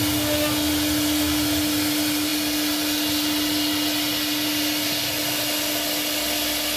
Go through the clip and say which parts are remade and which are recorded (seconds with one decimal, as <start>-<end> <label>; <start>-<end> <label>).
0.0-6.8 recorded